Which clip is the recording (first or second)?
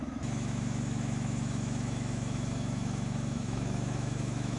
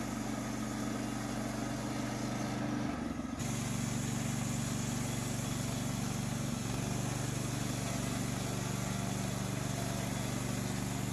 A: second